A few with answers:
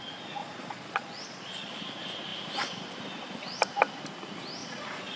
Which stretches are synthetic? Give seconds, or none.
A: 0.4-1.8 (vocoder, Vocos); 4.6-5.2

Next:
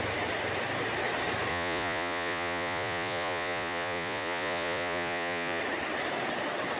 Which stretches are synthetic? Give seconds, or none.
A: 1.5-5.6 (vocoder, Vocos)

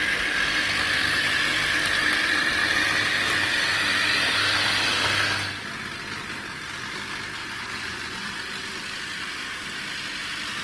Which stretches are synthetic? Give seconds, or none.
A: 7.4-8.3 (vocoder, Vocos)

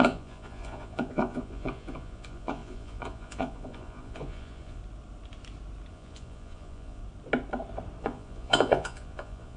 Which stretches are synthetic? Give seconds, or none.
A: 0.0-4.8 (vocoder, Vocos); 5.9-7.0; 8.0-9.6

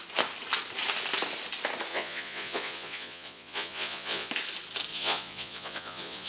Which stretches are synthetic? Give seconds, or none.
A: 1.9-4.3 (vocoder, Vocos); 4.9-6.3